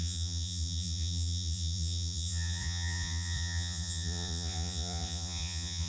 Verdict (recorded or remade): remade